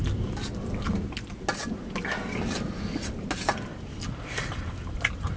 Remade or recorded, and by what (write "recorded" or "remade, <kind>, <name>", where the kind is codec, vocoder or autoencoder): recorded